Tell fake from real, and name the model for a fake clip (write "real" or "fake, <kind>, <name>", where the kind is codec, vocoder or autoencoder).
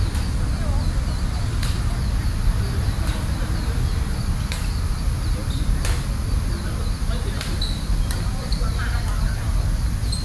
real